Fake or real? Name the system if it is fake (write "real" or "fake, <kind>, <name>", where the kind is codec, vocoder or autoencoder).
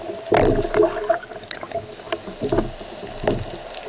real